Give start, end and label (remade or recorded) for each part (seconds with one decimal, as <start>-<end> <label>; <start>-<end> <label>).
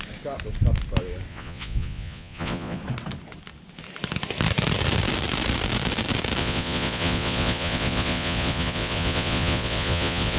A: 0.0-1.3 recorded; 1.3-2.8 remade; 2.8-6.4 recorded; 6.4-10.4 remade